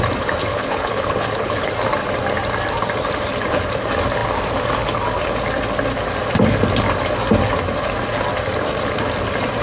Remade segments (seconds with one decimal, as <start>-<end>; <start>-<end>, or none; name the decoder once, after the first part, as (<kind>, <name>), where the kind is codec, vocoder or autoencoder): 0.5-1.7 (codec, HILCodec)